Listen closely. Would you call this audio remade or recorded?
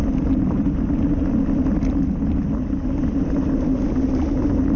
recorded